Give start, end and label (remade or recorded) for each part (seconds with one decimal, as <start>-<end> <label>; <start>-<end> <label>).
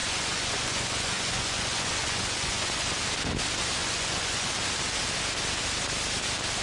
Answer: 0.0-3.0 remade; 3.0-3.8 recorded; 3.8-4.5 remade; 4.5-6.6 recorded